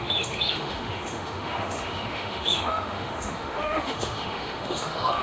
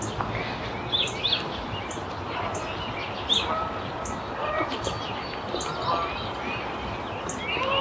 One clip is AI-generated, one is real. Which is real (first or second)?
second